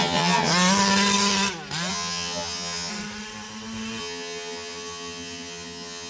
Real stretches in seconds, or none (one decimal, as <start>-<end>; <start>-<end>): 0.5-1.9; 2.9-4.0